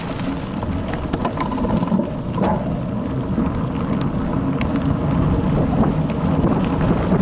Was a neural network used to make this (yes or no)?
no